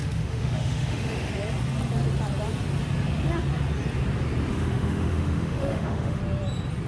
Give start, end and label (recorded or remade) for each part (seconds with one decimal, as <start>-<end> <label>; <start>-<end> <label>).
0.0-1.3 remade; 1.3-4.5 recorded; 4.5-6.2 remade; 6.2-6.9 recorded